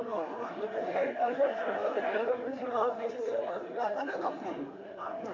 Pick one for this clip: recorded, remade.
remade